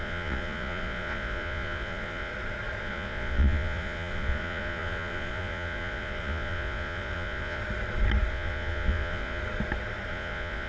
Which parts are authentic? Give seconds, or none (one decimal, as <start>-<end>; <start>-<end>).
2.3-2.8; 7.6-8.3; 9.4-10.1